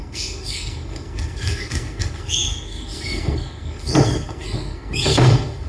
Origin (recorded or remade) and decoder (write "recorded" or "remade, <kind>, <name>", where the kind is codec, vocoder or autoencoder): remade, codec, SNAC